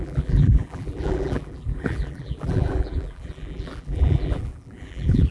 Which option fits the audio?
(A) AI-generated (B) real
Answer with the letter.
A